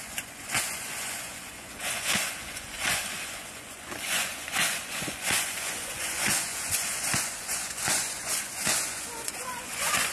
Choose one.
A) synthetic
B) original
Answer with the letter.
A